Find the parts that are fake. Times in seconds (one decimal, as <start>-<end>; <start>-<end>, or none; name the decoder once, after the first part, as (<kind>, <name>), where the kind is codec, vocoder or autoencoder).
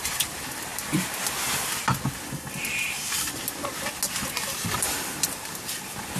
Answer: 0.0-0.7 (vocoder, BigVGAN v2); 4.4-6.2